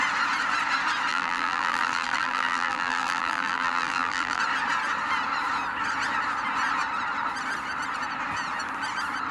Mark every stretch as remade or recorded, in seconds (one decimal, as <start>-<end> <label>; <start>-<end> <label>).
0.0-1.1 recorded; 1.1-4.4 remade; 4.4-9.3 recorded